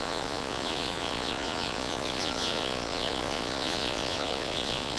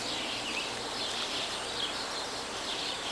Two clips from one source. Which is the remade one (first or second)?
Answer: first